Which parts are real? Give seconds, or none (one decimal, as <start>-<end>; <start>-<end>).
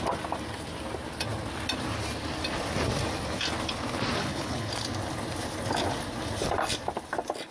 0.0-4.2; 4.7-7.5